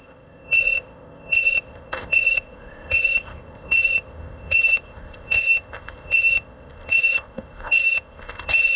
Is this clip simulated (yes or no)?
yes